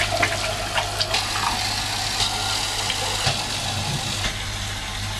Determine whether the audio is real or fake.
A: real